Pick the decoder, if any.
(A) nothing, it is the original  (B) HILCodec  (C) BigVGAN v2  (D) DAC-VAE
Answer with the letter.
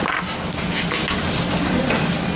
A